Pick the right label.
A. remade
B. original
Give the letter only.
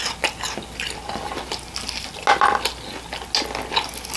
B